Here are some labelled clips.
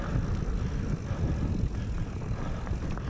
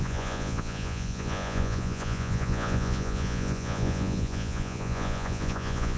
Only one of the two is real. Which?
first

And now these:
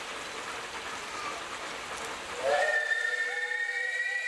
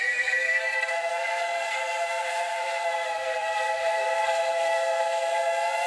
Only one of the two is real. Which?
first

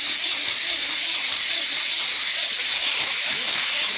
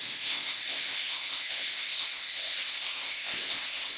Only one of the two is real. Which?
first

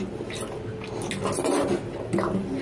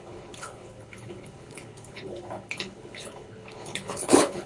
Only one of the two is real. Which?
first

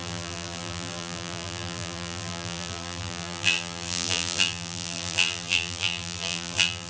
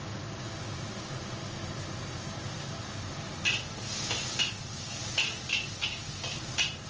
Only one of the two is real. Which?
second